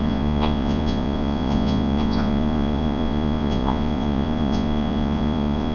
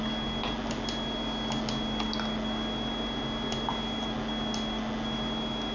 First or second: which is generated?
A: first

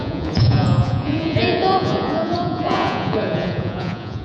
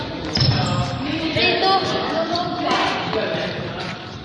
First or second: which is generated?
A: first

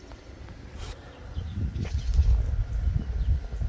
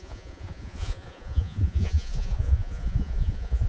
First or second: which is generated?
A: second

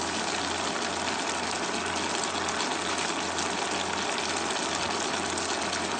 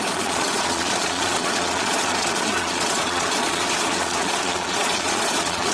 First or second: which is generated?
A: second